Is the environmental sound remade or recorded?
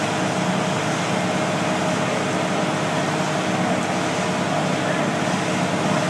recorded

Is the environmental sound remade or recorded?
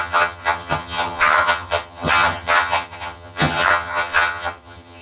remade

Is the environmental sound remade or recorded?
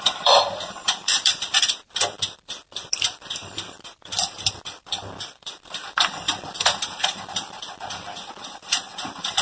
remade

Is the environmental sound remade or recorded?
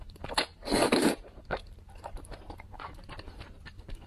remade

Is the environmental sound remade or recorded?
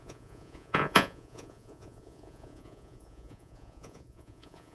remade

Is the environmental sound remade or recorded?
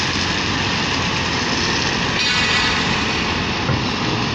recorded